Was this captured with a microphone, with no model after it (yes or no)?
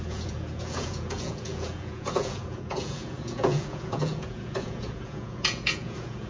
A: no